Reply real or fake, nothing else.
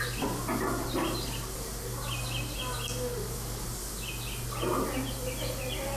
real